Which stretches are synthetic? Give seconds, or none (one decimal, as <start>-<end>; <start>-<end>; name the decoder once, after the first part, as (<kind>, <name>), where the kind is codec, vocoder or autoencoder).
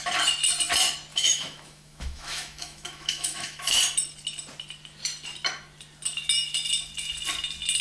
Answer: 1.1-3.8 (autoencoder, DAC-VAE)